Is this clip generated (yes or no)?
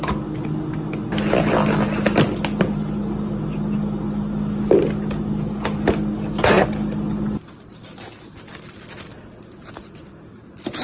no